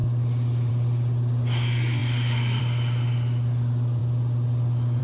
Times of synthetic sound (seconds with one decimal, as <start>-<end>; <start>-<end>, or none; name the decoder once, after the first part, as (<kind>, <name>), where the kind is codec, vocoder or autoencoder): none